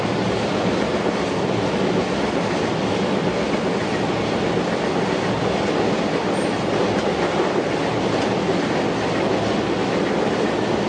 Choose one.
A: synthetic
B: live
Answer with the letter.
B